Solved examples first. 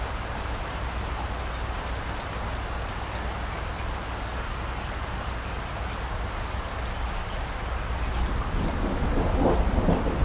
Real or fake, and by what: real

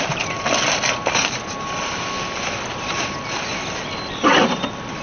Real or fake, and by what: real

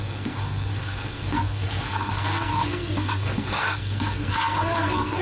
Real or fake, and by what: fake, codec, SNAC